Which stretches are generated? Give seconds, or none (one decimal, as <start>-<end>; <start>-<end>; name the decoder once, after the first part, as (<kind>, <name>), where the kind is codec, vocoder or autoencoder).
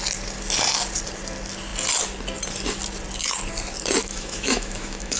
4.0-5.2 (autoencoder, DAC-VAE)